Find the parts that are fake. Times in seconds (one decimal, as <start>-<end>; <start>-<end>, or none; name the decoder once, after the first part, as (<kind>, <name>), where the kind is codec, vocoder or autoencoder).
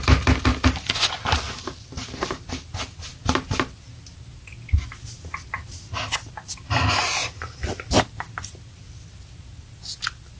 none